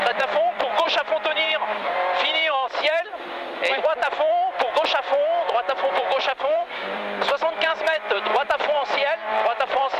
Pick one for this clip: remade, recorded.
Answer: remade